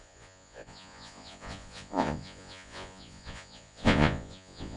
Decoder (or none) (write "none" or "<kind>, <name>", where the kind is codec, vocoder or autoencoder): vocoder, Vocos